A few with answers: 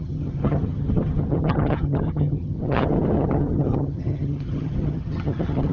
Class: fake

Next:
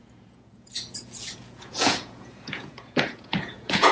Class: fake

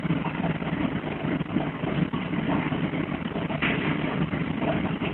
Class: fake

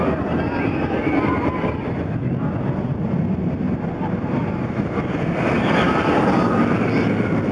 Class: real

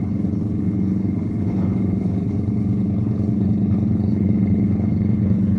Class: fake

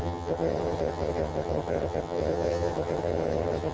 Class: fake